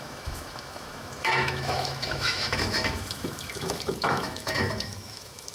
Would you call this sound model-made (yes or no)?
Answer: yes